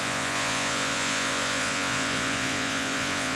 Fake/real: fake